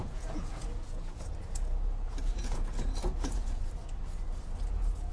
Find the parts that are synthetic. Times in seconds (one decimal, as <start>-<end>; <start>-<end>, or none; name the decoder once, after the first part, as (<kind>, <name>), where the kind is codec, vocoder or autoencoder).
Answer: 0.0-1.3 (vocoder, Vocos); 2.3-3.7